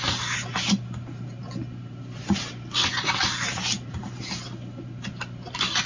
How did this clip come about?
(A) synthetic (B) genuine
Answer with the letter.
B